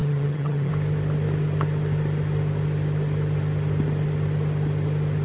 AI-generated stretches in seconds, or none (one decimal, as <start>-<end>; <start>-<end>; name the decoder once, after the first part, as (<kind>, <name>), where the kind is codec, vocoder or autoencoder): 0.0-0.7 (vocoder, HiFi-GAN)